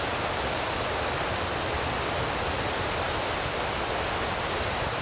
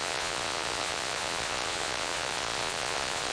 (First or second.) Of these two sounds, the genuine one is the first